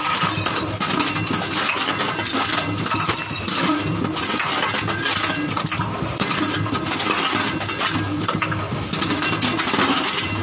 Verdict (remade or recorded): recorded